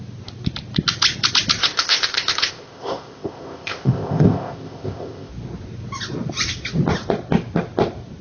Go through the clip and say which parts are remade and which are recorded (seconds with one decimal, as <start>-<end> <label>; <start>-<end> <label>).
0.0-1.6 recorded; 1.6-5.3 remade; 5.3-8.2 recorded